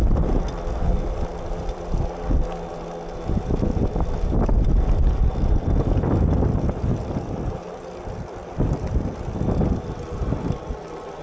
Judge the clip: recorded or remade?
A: recorded